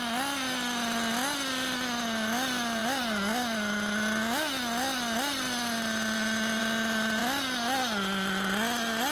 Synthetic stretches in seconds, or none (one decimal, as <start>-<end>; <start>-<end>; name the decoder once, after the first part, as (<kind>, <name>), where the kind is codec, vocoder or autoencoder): none